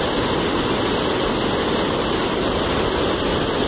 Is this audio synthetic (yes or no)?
no